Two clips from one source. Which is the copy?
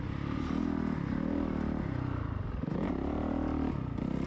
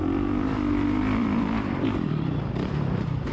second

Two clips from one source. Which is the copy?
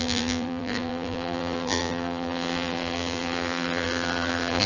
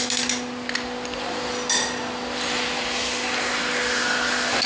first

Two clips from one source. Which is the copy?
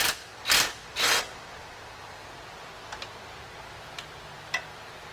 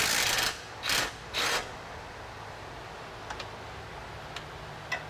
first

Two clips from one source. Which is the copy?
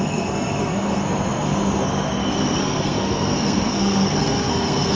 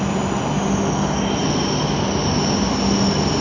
first